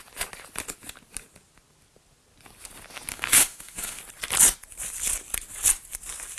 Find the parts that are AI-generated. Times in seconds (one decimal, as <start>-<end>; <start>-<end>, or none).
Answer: 3.1-4.0